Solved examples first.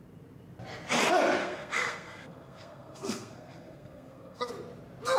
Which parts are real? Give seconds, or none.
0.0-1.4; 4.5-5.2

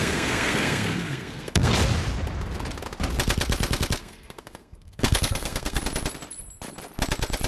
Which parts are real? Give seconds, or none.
1.7-4.0; 5.8-7.5

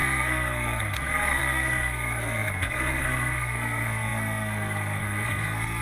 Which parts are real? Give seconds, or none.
none